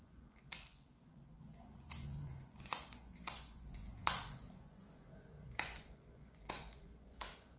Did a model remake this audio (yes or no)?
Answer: yes